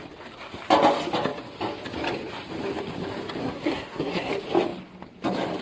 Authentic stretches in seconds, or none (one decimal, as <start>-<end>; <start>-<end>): 0.0-3.4; 4.3-5.6